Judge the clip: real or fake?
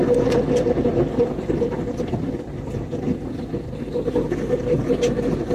real